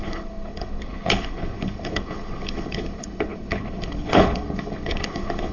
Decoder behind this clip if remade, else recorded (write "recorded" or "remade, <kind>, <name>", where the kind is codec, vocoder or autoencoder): remade, codec, HILCodec